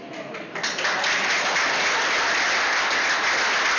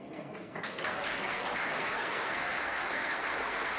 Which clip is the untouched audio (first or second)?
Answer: first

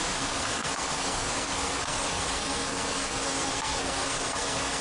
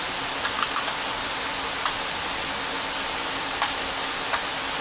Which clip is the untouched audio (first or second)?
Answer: second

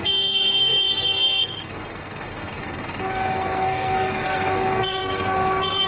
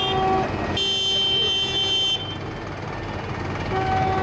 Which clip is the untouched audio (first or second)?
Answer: second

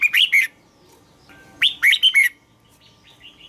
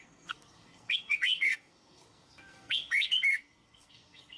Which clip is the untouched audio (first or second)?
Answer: first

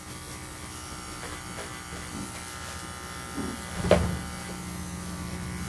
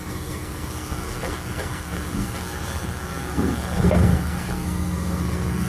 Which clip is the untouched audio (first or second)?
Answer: first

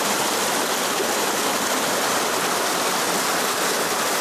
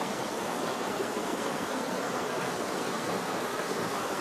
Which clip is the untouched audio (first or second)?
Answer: first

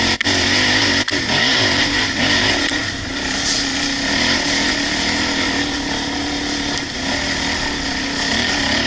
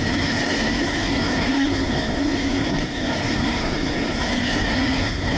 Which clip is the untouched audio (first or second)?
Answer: first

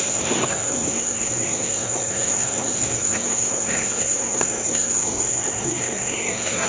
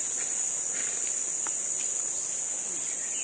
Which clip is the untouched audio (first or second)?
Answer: second